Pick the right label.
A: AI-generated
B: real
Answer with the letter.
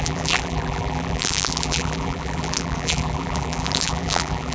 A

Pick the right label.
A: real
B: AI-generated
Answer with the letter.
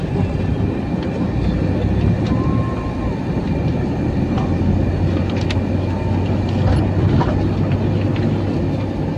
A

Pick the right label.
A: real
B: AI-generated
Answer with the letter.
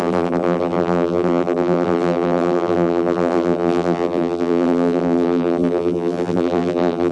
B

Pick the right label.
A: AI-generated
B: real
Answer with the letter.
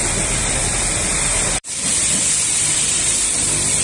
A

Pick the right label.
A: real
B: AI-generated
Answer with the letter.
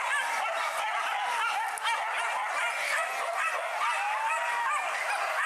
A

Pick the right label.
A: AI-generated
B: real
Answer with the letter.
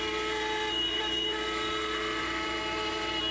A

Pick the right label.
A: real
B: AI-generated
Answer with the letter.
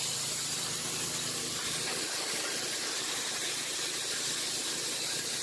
A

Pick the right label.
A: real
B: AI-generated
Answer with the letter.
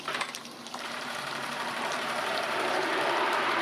B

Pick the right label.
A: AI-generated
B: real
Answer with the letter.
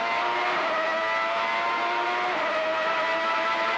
A